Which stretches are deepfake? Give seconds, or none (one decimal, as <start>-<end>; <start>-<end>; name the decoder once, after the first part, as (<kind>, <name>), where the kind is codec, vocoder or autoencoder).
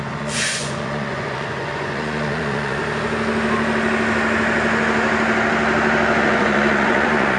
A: 0.0-2.8 (vocoder, Vocos); 6.2-7.4